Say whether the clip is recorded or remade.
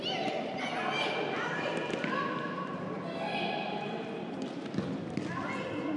recorded